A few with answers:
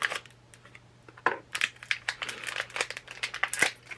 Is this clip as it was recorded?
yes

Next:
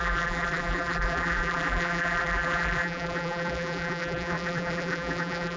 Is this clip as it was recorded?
no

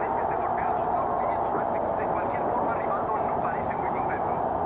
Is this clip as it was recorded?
yes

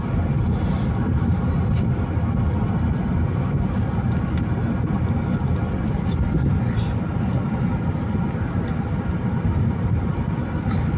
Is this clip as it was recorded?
yes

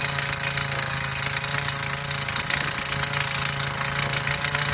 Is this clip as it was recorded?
yes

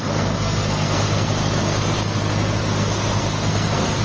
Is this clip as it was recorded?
no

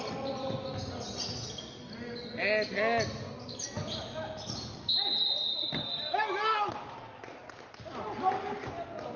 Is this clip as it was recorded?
yes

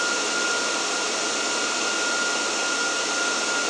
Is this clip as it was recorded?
yes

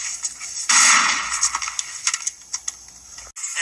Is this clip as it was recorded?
yes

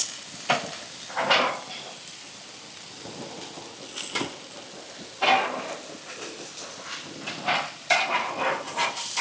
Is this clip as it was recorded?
yes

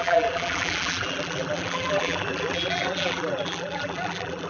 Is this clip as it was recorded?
no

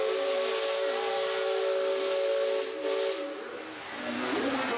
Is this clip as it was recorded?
yes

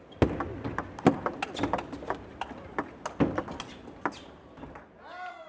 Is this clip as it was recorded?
yes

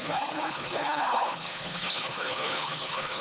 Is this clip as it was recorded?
no